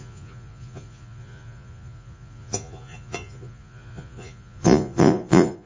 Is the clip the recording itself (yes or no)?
no